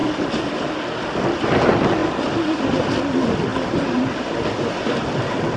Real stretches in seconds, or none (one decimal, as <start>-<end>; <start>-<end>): 0.7-3.5; 4.7-5.6